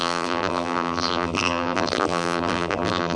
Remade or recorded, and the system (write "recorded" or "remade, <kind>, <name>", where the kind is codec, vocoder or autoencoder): remade, vocoder, BigVGAN v2